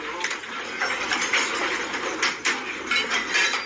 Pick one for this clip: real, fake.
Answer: real